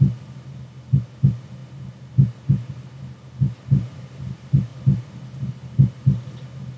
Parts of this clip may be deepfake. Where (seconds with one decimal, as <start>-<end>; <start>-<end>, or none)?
none